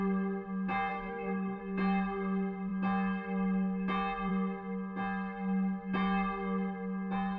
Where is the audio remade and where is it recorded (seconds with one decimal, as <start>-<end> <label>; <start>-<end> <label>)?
0.0-0.9 recorded; 0.9-1.6 remade; 1.6-7.4 recorded